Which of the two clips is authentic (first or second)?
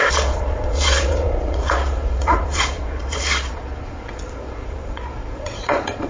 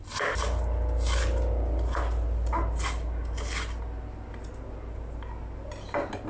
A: second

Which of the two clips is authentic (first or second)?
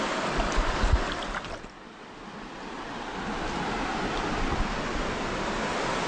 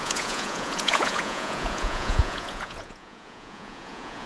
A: first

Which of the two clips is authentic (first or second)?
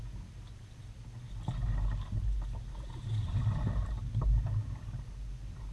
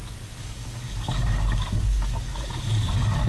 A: first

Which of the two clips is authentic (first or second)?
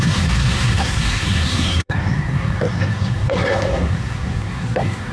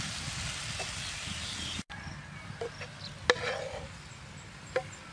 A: second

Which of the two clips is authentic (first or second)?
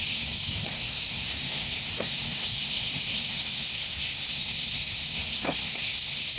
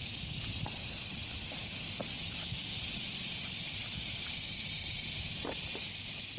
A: second